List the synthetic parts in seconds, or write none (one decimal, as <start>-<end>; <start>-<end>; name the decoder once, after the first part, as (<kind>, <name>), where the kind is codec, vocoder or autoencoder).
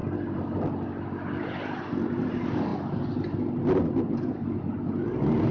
none